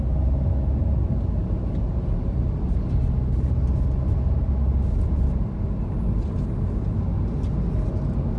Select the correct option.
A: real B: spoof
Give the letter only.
A